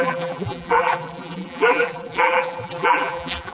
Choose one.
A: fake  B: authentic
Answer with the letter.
A